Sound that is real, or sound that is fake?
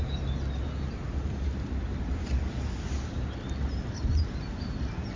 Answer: real